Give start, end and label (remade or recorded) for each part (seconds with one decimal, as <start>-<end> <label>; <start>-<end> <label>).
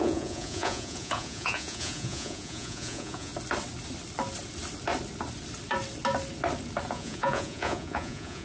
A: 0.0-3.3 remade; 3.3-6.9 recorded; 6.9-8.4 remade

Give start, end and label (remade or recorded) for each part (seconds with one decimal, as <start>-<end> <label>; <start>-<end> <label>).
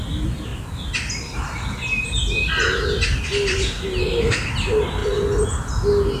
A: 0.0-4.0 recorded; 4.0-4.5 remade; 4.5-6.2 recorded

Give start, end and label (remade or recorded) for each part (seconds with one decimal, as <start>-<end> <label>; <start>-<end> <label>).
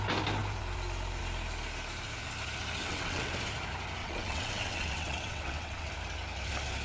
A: 0.0-2.8 recorded; 2.8-3.3 remade; 3.3-4.0 recorded; 4.0-5.9 remade; 5.9-6.8 recorded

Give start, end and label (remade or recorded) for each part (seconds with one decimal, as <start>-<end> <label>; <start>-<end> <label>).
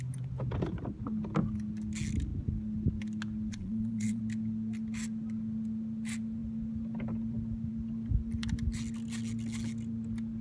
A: 0.0-3.5 recorded; 3.5-4.2 remade; 4.2-10.4 recorded